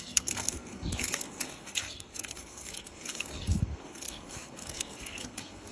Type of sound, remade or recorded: remade